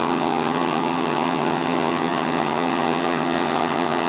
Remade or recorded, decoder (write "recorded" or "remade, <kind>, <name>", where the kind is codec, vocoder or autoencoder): remade, vocoder, HiFi-GAN